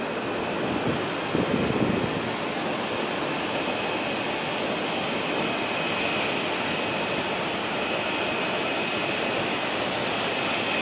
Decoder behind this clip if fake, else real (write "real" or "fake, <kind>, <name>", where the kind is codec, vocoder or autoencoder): real